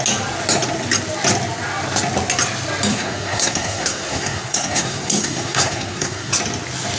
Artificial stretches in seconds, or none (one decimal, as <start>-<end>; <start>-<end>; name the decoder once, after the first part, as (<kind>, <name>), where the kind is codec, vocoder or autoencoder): 2.9-6.3 (codec, SNAC)